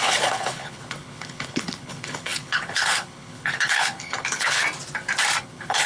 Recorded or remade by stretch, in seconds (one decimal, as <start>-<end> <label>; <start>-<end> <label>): 0.0-4.6 remade; 4.6-5.4 recorded; 5.4-5.9 remade